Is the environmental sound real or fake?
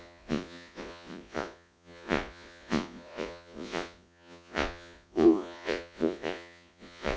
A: fake